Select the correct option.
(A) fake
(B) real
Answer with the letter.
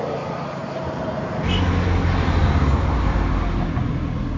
B